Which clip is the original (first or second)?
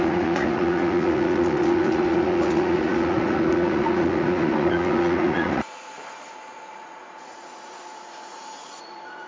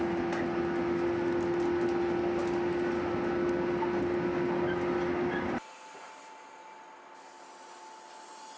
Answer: second